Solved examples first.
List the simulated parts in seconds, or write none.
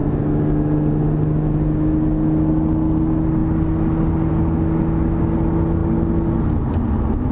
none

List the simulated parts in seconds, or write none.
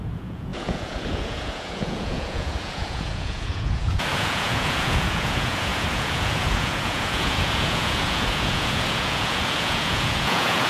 0.0-10.7 (vocoder, Vocos)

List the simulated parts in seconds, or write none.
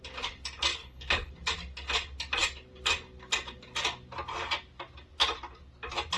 0.7-1.3 (codec, HILCodec)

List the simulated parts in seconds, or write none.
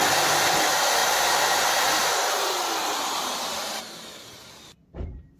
1.0-3.8 (vocoder, BigVGAN v2)